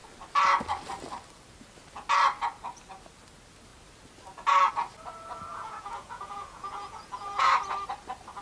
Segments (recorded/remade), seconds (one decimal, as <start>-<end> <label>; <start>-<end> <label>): 0.0-5.5 recorded; 5.5-7.5 remade; 7.5-8.4 recorded